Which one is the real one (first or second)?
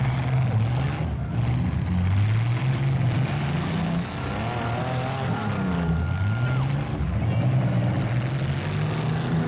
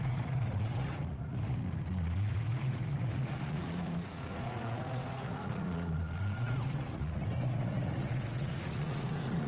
first